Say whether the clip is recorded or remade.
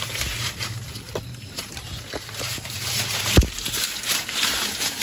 remade